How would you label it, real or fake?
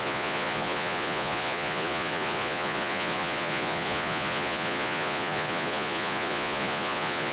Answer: fake